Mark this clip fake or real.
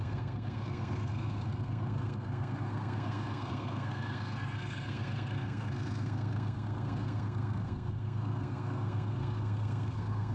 fake